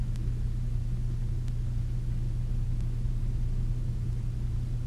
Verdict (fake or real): real